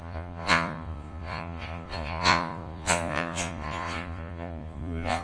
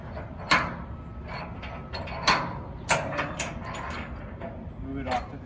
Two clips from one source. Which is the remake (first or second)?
first